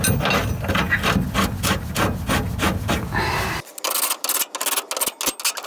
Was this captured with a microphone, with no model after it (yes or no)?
yes